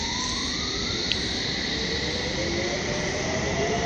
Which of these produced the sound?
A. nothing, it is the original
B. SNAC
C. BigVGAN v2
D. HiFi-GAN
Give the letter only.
C